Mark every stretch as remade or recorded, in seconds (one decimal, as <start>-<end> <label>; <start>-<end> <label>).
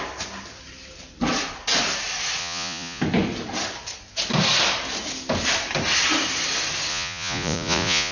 0.0-2.4 recorded; 2.4-3.0 remade; 3.0-6.9 recorded; 6.9-8.1 remade